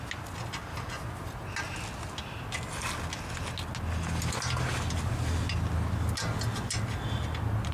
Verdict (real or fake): real